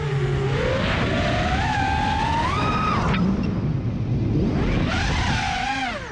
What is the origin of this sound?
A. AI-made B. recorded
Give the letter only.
B